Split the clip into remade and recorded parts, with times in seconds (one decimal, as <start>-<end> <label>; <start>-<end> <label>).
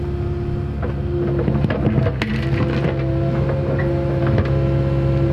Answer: 0.0-5.3 recorded